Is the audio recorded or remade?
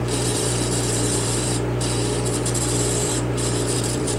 remade